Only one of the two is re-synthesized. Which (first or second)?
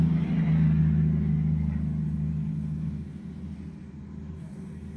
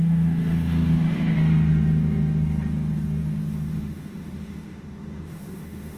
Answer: second